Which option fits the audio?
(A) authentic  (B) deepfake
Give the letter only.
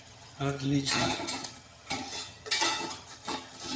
B